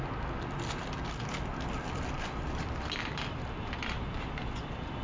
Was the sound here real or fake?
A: real